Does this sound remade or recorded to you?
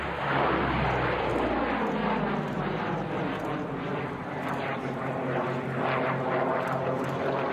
recorded